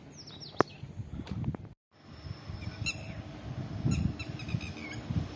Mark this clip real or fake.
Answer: real